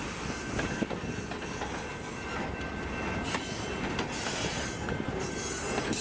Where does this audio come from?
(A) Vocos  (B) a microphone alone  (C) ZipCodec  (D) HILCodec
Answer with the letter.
B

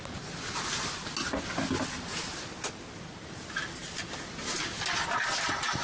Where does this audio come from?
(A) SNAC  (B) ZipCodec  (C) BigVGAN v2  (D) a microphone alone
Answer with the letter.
D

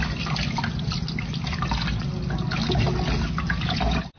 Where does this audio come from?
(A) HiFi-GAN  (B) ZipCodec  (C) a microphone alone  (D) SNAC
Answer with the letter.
C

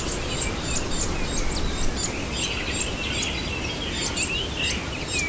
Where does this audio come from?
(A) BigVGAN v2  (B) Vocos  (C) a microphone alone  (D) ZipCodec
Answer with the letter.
C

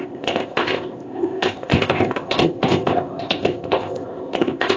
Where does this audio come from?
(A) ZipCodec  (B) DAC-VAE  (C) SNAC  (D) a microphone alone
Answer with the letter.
A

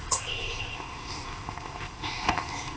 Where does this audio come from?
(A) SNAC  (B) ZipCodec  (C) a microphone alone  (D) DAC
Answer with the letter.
B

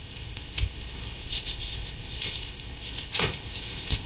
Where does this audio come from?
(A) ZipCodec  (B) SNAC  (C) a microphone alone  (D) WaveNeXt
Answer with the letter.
A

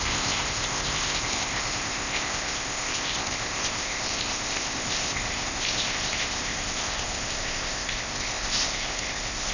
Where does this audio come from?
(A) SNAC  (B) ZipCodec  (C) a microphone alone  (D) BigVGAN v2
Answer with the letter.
B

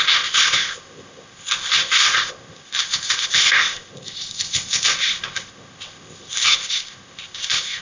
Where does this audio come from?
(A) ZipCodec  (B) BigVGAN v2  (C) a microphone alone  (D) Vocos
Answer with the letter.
A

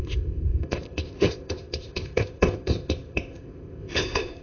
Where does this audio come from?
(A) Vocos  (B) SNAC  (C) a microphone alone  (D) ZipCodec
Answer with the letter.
D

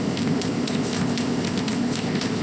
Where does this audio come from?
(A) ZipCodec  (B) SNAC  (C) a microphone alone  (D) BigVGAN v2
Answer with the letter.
A